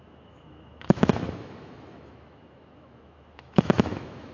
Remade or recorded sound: remade